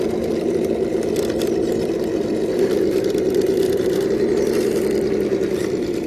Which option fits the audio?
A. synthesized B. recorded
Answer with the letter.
A